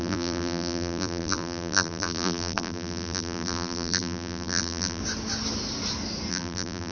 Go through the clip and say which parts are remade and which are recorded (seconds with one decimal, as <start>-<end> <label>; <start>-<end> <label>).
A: 0.0-5.0 remade; 5.0-6.3 recorded; 6.3-6.9 remade